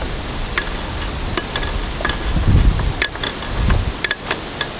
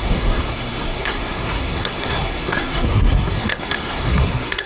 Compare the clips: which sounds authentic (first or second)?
first